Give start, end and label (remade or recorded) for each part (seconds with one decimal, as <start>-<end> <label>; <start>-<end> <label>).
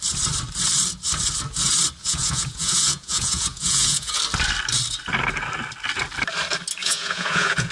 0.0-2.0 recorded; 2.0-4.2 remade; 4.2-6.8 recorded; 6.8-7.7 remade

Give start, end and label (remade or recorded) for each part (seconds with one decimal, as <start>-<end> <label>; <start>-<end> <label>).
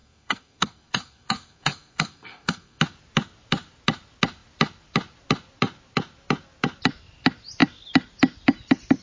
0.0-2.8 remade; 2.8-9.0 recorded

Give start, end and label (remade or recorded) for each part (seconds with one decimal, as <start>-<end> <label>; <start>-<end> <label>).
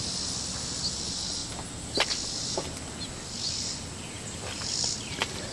0.0-5.5 recorded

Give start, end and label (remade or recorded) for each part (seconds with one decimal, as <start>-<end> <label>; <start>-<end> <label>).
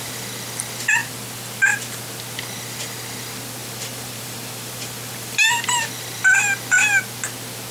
0.0-3.6 recorded; 3.6-6.2 remade; 6.2-7.7 recorded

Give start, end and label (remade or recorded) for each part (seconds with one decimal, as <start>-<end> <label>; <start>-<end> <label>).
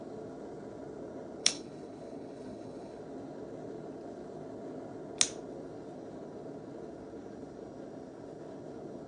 0.0-1.4 recorded; 1.4-3.0 remade; 3.0-9.1 recorded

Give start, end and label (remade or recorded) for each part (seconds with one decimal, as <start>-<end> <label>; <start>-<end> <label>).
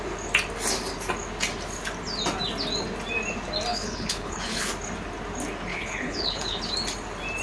0.0-3.7 recorded; 3.7-4.7 remade; 4.7-5.7 recorded; 5.7-6.6 remade; 6.6-7.4 recorded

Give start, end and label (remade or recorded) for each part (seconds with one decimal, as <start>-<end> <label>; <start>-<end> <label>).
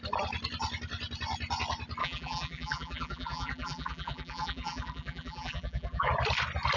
0.0-2.0 recorded; 2.0-6.1 remade; 6.1-6.8 recorded